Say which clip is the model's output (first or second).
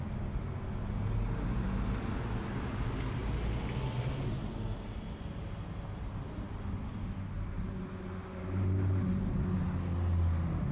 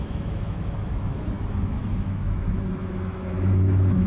second